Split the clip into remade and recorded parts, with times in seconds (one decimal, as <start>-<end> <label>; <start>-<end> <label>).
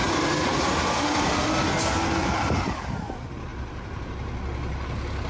0.0-1.4 remade; 1.4-2.2 recorded; 2.2-2.9 remade; 2.9-3.5 recorded; 3.5-5.3 remade